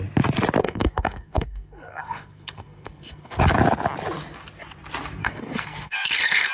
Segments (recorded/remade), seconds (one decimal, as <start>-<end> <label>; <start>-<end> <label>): 0.0-0.6 recorded; 0.6-3.4 remade; 3.4-5.2 recorded; 5.2-6.5 remade